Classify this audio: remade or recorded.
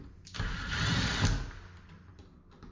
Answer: recorded